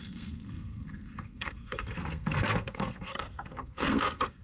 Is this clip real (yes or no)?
no